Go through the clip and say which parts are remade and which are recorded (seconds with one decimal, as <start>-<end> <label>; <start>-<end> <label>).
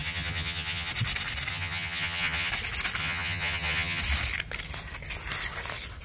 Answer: 0.0-0.9 remade; 0.9-1.5 recorded; 1.5-2.5 remade; 2.5-3.0 recorded; 3.0-4.0 remade; 4.0-6.0 recorded